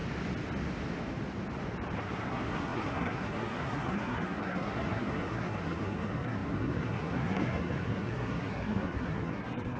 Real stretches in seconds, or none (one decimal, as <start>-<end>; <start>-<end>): 0.0-2.0